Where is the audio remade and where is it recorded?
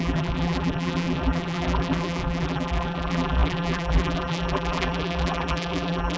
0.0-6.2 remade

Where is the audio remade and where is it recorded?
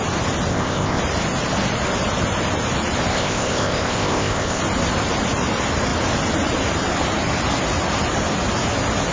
0.0-0.5 recorded; 0.5-1.0 remade; 1.0-3.1 recorded; 3.1-4.6 remade; 4.6-9.1 recorded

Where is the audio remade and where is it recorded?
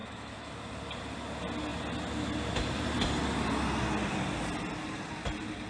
0.0-0.5 remade; 0.5-5.7 recorded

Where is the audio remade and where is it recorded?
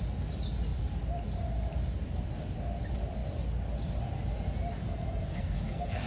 0.0-5.3 recorded; 5.3-6.1 remade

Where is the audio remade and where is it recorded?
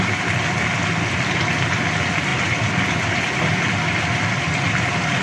0.0-5.2 recorded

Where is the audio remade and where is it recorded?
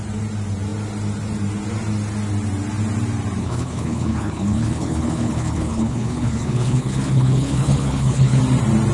0.0-3.4 recorded; 3.4-8.4 remade; 8.4-8.9 recorded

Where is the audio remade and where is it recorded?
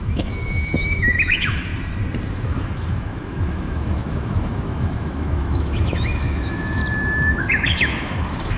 0.0-1.7 remade; 1.7-2.3 recorded; 2.3-6.8 remade; 6.8-7.4 recorded; 7.4-8.6 remade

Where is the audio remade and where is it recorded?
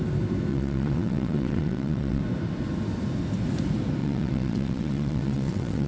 0.0-0.5 recorded; 0.5-2.2 remade; 2.2-4.0 recorded; 4.0-5.9 remade